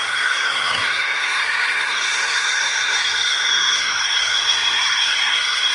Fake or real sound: fake